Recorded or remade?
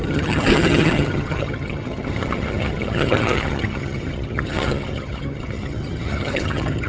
remade